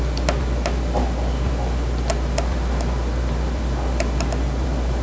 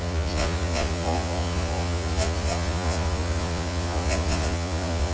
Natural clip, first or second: first